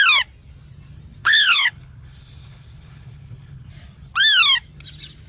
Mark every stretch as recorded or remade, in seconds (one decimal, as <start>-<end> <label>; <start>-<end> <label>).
0.0-1.2 recorded; 1.2-3.7 remade; 3.7-5.3 recorded